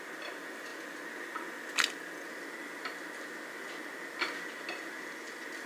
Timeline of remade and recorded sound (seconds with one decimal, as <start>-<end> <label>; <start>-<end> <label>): 0.0-5.7 recorded